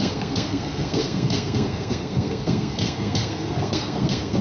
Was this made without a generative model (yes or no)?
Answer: no